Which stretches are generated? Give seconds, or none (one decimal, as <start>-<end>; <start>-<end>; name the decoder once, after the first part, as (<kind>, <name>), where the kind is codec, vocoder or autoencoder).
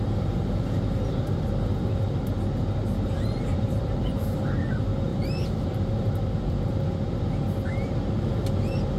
3.5-4.6 (vocoder, BigVGAN v2); 5.1-6.8